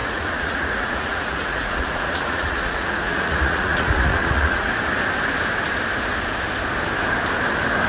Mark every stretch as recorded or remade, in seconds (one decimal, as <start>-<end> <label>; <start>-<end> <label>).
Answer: 0.0-4.7 remade; 4.7-7.9 recorded